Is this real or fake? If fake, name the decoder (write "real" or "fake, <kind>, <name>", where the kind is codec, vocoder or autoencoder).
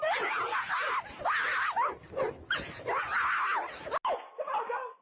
real